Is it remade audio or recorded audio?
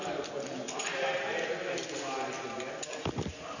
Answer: recorded